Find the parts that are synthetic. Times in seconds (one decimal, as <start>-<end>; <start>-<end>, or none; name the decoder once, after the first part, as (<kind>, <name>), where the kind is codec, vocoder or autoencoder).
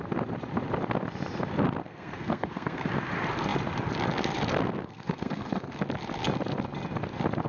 1.8-2.9 (codec, SNAC); 4.8-5.8